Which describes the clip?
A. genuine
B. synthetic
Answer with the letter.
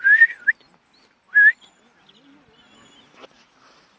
A